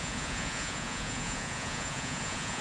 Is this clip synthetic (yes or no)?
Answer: yes